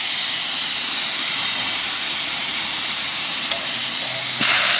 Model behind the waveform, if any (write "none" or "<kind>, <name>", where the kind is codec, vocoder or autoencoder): none